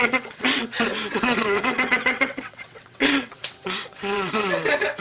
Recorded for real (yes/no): no